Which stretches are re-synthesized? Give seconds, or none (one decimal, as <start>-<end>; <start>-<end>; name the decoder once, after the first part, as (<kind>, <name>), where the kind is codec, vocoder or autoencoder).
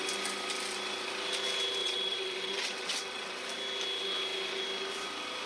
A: 1.8-3.3 (vocoder, WaveNeXt)